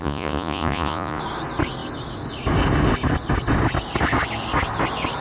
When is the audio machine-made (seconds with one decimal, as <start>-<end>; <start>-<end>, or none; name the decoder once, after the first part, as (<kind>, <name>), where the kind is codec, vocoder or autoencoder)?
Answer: 0.0-1.2 (vocoder, Vocos)